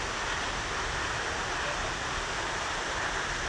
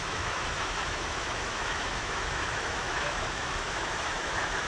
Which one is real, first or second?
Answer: first